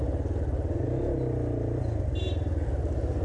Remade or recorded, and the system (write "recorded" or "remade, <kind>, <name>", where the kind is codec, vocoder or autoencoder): recorded